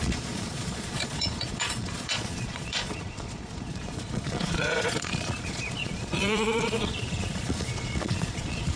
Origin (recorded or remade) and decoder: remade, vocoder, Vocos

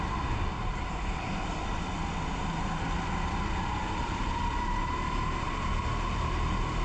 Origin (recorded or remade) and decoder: recorded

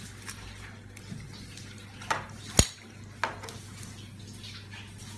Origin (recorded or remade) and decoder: recorded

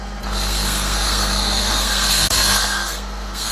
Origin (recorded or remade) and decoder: remade, codec, SNAC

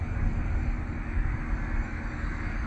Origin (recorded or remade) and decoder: remade, codec, DAC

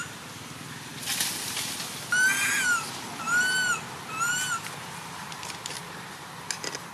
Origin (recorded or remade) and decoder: recorded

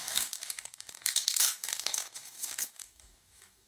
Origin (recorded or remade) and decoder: remade, codec, DAC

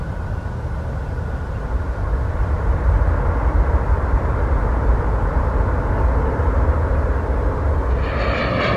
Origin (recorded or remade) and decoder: recorded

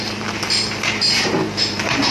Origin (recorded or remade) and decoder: remade, vocoder, BigVGAN v2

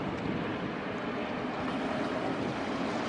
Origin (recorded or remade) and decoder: recorded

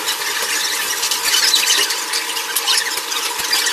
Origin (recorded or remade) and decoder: recorded